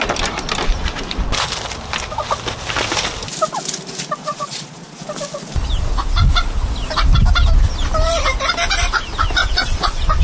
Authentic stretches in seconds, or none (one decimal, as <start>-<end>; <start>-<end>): 0.0-4.2; 5.0-9.4